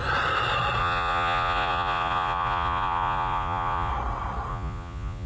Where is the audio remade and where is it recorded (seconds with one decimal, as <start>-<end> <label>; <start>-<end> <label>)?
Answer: 0.0-0.8 recorded; 0.8-3.9 remade; 3.9-4.5 recorded; 4.5-5.3 remade